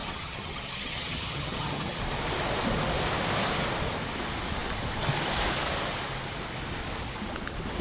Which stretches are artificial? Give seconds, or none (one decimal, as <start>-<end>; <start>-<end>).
0.0-2.0